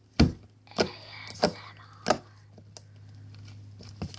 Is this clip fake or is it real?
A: real